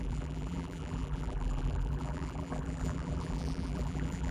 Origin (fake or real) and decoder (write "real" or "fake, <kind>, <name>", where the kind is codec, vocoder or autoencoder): fake, vocoder, BigVGAN v2